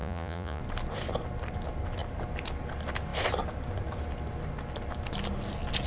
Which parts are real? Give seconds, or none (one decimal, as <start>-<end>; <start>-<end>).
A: 0.6-5.9